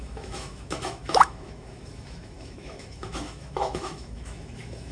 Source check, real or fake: fake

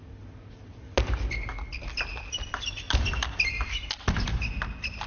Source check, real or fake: real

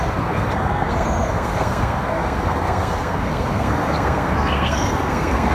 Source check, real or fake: fake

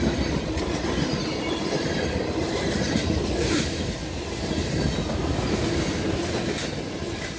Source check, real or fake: real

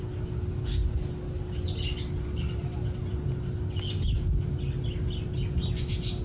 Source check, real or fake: real